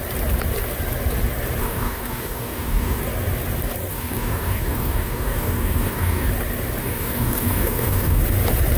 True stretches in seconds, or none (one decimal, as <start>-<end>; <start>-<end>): 0.0-1.6; 3.0-3.9; 6.3-6.8; 8.2-8.8